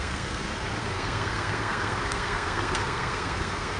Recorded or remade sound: remade